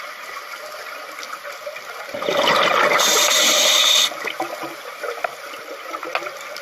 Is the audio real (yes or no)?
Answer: yes